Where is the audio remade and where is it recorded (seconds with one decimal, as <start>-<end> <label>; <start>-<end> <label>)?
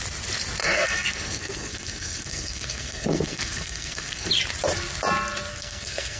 0.0-0.6 recorded; 0.6-4.3 remade; 4.3-5.5 recorded; 5.5-6.2 remade